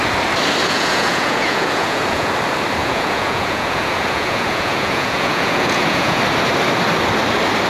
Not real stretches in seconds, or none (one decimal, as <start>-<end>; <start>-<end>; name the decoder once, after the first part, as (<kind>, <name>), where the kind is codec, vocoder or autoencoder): 0.6-2.3 (vocoder, Vocos); 2.8-6.2